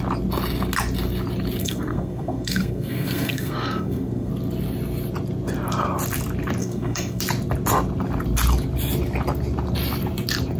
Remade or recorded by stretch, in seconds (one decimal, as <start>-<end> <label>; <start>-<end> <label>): 0.0-1.6 recorded; 1.6-4.3 remade; 4.3-6.6 recorded; 6.6-7.2 remade; 7.2-10.6 recorded